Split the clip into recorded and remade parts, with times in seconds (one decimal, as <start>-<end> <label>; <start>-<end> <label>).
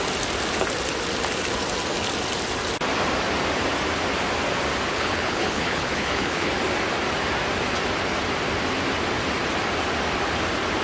0.0-4.9 recorded; 4.9-6.5 remade; 6.5-10.8 recorded